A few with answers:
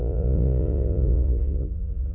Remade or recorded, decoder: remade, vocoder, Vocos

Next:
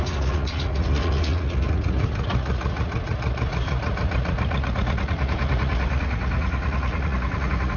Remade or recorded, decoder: remade, vocoder, Vocos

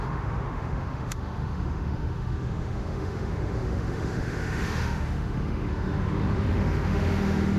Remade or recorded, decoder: remade, autoencoder, DAC-VAE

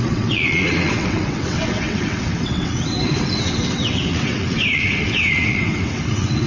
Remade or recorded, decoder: remade, vocoder, WaveNeXt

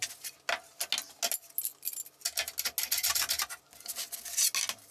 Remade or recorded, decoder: recorded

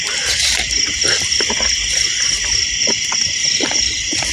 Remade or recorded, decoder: recorded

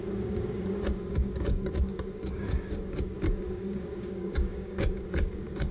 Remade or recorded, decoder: remade, codec, DAC